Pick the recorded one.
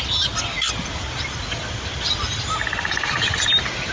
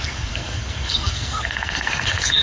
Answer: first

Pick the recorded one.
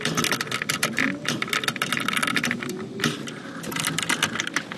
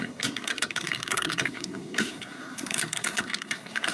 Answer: first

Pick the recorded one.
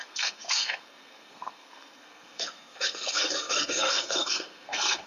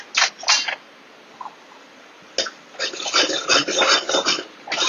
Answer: second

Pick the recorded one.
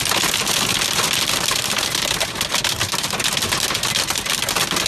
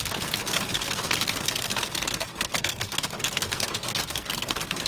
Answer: first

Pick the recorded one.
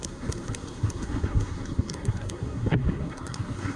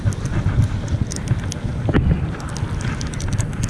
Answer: second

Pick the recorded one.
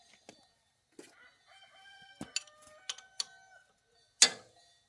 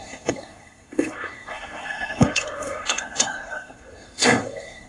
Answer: first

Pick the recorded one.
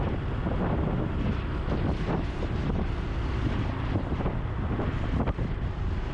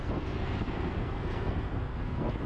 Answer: first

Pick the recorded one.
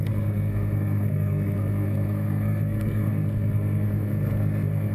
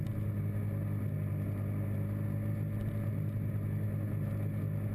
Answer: second